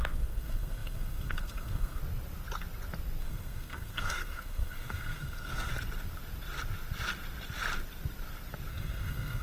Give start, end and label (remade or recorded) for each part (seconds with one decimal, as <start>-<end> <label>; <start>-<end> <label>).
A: 0.0-2.0 remade; 2.0-3.2 recorded; 3.2-5.7 remade; 5.7-8.7 recorded; 8.7-9.4 remade